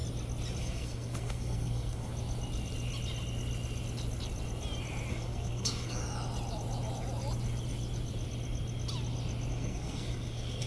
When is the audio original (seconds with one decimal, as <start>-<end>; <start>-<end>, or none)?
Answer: 0.0-0.6; 2.1-5.1; 6.0-9.5